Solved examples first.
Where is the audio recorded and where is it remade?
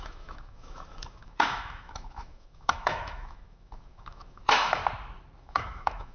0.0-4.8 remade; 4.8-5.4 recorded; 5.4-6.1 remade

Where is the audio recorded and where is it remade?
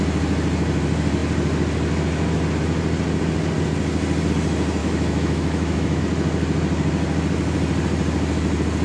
0.0-4.8 recorded; 4.8-6.0 remade; 6.0-8.8 recorded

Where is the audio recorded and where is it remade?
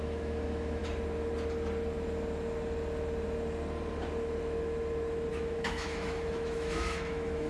0.0-0.8 remade; 0.8-5.3 recorded; 5.3-7.5 remade